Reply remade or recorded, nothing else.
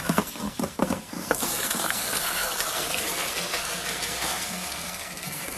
remade